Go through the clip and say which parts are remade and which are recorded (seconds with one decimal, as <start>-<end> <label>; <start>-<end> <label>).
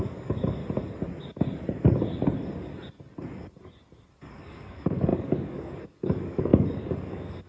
0.0-0.6 remade; 0.6-4.4 recorded; 4.4-7.5 remade